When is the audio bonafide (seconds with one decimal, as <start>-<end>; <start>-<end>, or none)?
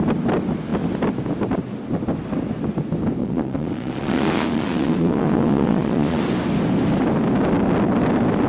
0.0-3.2; 6.2-8.5